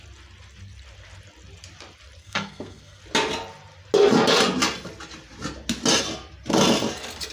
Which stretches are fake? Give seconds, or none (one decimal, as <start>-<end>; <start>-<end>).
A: 2.2-3.0